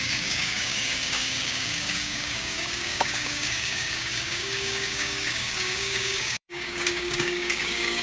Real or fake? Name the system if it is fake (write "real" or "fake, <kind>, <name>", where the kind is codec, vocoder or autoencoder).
fake, codec, DAC